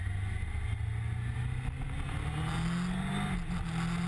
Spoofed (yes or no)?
no